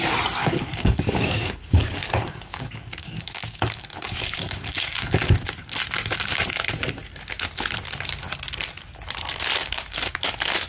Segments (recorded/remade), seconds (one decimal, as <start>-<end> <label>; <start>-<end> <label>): 0.0-0.4 recorded; 0.4-5.3 remade; 5.3-9.6 recorded; 9.6-10.2 remade; 10.2-10.7 recorded